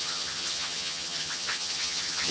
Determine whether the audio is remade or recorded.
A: remade